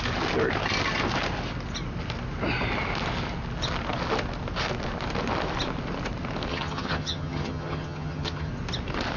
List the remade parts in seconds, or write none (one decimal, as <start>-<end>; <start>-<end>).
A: 6.5-8.5